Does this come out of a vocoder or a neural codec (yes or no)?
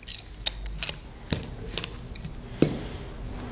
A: no